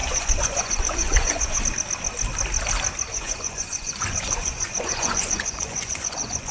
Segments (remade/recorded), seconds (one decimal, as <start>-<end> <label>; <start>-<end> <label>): 0.0-1.6 remade; 1.6-3.1 recorded; 3.1-6.5 remade